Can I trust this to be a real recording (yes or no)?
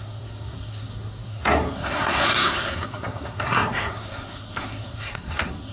no